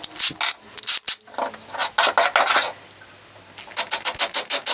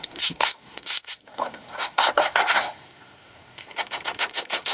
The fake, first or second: second